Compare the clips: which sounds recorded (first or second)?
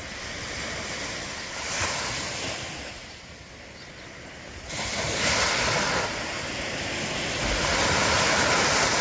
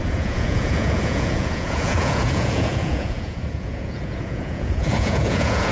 first